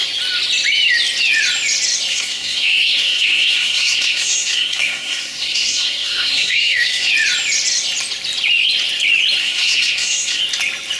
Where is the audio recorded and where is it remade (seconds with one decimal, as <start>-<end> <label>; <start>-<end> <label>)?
0.0-2.1 recorded; 2.1-7.1 remade; 7.1-9.4 recorded; 9.4-10.4 remade; 10.4-11.0 recorded

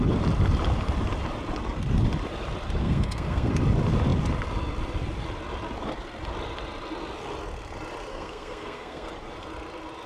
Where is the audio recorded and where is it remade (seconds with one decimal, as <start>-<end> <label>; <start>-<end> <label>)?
0.0-2.8 recorded; 2.8-3.5 remade; 3.5-8.1 recorded; 8.1-9.1 remade; 9.1-10.1 recorded

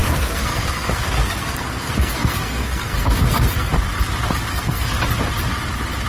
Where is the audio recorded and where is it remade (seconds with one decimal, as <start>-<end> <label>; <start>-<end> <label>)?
0.0-3.7 remade; 3.7-4.5 recorded; 4.5-5.0 remade; 5.0-6.1 recorded